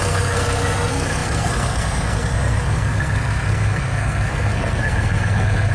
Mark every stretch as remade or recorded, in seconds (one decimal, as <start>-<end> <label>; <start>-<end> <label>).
0.0-5.7 remade